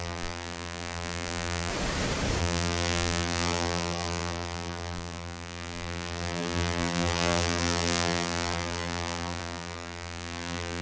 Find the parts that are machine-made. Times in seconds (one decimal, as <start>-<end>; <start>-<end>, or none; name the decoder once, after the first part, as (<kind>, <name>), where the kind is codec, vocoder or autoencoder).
0.0-1.7 (vocoder, BigVGAN v2); 2.4-10.8